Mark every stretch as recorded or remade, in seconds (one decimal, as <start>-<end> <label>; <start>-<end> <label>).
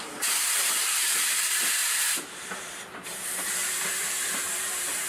0.0-5.1 remade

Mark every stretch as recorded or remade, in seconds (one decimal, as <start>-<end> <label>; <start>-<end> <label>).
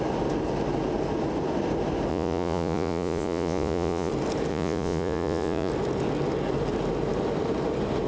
0.0-2.1 recorded; 2.1-4.1 remade; 4.1-4.5 recorded; 4.5-5.7 remade; 5.7-8.1 recorded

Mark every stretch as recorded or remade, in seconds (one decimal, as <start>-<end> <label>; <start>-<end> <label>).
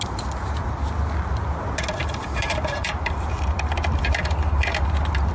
0.0-2.0 recorded; 2.0-5.3 remade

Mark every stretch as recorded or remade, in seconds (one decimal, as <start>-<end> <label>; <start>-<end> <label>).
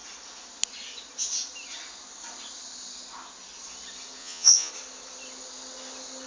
0.0-4.2 recorded; 4.2-4.7 remade; 4.7-6.3 recorded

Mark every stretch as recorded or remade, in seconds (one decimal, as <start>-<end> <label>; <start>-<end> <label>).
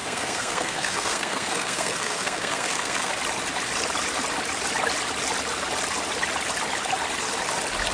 0.0-3.1 remade; 3.1-7.9 recorded